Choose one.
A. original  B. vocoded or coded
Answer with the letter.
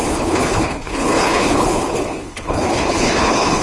B